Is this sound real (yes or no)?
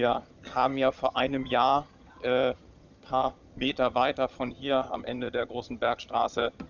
no